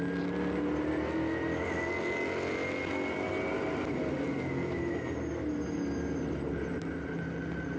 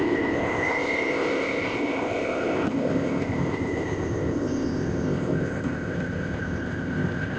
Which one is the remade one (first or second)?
second